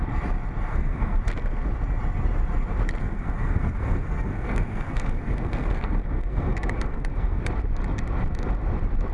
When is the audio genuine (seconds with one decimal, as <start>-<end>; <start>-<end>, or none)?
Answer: 0.0-0.7; 1.2-3.0; 7.4-9.1